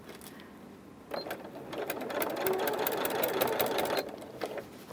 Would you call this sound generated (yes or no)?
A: no